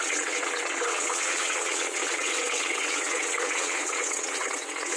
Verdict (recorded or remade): remade